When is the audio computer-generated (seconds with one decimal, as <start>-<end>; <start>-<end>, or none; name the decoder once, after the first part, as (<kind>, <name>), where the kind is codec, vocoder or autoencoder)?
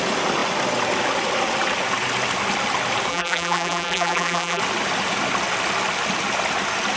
3.1-4.6 (vocoder, BigVGAN v2)